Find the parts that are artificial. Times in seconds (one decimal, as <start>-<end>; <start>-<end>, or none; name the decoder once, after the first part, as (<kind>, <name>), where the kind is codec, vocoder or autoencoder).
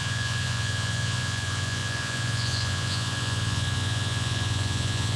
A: 0.0-5.2 (vocoder, Vocos)